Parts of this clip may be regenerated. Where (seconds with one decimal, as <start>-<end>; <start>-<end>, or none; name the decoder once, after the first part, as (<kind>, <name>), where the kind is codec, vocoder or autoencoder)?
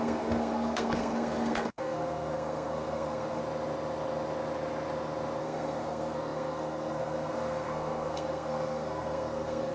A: 0.0-3.4 (codec, SNAC); 5.4-9.7